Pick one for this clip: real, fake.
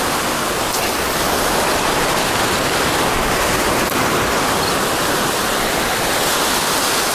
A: real